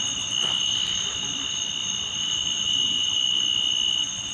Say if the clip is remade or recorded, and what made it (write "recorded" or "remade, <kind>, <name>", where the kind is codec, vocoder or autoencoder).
recorded